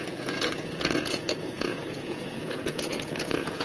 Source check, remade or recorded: remade